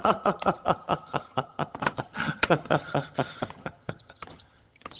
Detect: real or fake fake